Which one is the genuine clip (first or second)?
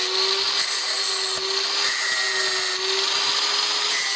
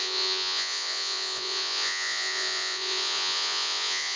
first